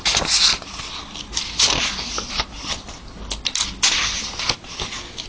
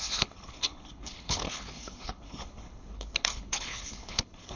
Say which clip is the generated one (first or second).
second